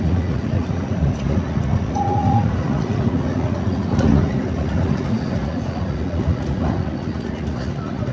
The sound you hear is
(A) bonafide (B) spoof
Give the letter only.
B